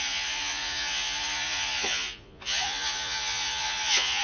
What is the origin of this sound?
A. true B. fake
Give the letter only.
B